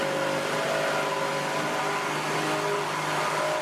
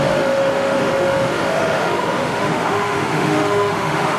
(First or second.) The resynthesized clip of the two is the second